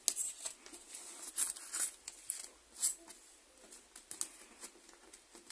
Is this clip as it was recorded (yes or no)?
yes